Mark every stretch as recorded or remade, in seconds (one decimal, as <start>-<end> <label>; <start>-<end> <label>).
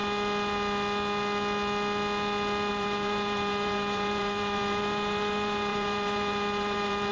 0.0-2.7 recorded; 2.7-7.1 remade